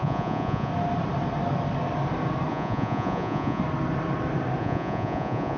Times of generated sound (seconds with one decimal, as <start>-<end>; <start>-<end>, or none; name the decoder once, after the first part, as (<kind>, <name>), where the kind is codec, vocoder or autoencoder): 0.0-0.7 (vocoder, Vocos); 2.5-3.6; 4.6-5.6